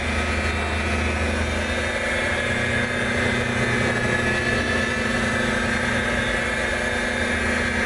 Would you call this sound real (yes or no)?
yes